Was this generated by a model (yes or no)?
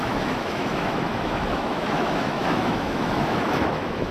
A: yes